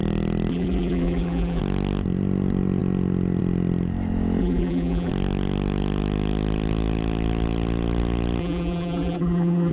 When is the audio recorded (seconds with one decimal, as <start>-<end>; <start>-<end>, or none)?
0.0-0.5; 1.6-4.4; 5.1-8.4